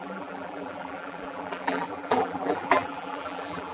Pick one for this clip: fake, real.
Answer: fake